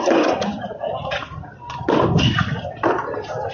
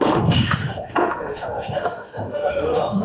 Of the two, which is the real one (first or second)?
first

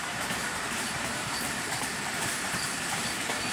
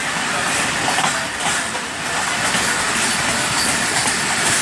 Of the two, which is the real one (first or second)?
second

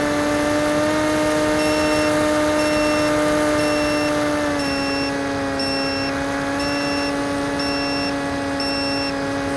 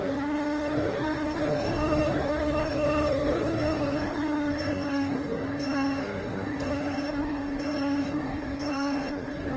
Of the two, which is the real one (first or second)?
first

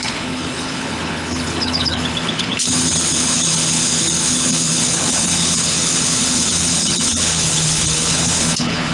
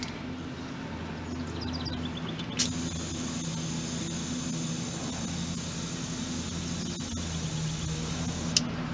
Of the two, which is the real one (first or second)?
second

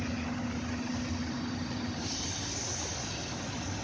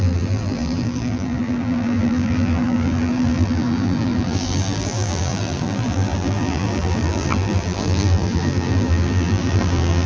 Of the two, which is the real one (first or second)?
first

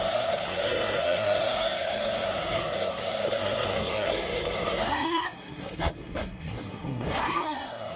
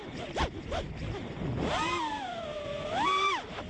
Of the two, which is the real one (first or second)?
second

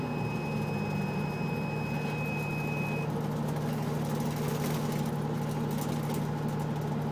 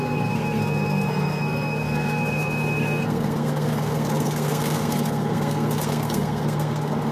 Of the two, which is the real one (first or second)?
first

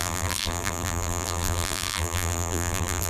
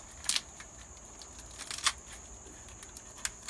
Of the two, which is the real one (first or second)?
second